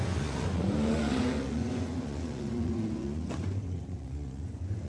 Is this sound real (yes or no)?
no